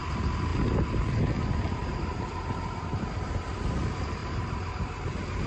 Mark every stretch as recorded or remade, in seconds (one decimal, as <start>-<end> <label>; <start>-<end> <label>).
0.0-1.8 recorded; 1.8-3.5 remade; 3.5-4.2 recorded; 4.2-5.1 remade; 5.1-5.5 recorded